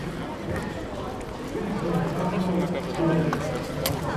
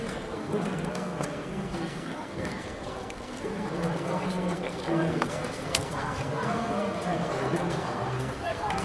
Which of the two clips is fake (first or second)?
second